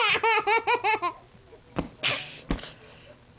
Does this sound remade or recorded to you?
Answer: recorded